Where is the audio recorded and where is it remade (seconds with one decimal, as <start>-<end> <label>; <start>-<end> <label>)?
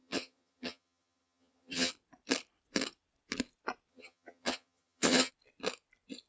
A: 0.0-1.9 remade; 1.9-3.9 recorded; 3.9-5.3 remade; 5.3-6.3 recorded